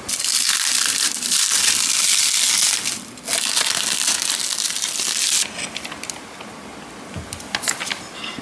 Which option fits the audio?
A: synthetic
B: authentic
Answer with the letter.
B